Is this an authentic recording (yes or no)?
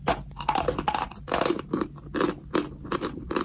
yes